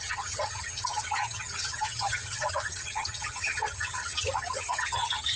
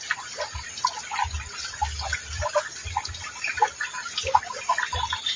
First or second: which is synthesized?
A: first